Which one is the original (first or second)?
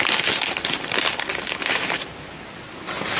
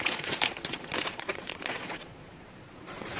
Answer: first